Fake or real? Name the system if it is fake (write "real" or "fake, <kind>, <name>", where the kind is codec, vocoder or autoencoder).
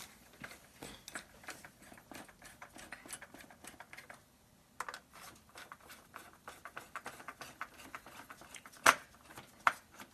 real